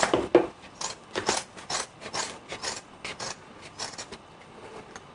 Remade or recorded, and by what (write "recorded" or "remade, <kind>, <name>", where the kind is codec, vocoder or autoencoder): recorded